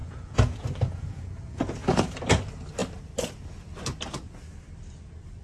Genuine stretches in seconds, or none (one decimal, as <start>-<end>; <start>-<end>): 2.4-5.4